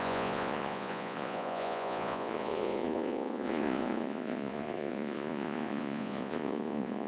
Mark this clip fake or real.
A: fake